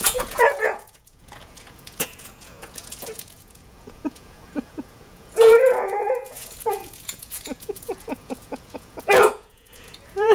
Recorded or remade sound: remade